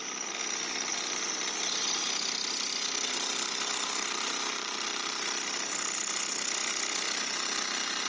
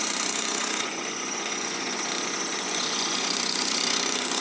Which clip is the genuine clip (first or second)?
first